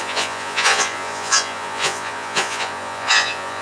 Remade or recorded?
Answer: remade